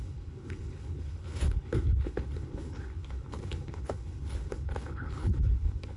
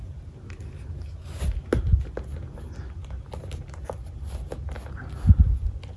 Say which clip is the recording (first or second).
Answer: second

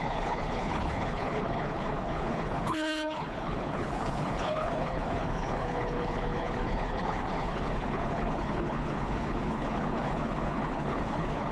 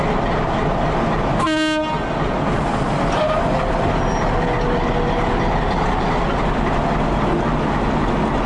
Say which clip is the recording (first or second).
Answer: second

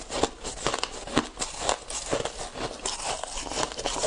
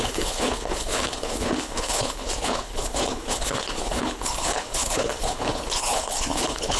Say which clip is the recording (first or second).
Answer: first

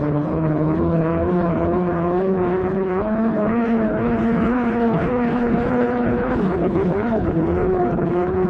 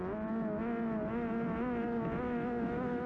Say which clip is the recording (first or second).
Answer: second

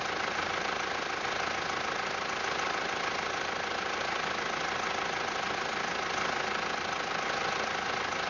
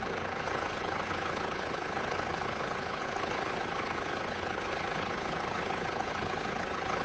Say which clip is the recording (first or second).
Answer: first